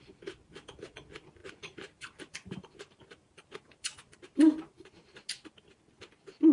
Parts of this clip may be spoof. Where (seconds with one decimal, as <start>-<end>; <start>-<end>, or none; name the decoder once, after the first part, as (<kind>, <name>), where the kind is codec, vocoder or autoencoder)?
1.4-5.3 (vocoder, BigVGAN v2)